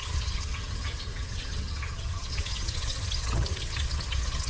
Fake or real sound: fake